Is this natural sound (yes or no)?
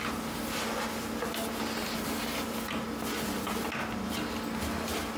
yes